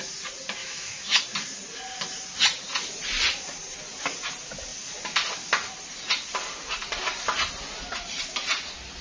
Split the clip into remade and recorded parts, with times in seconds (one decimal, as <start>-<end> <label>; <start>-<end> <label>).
0.0-0.6 recorded; 0.6-1.2 remade; 1.2-9.0 recorded